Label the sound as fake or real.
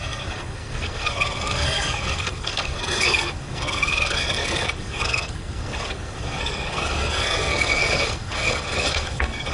fake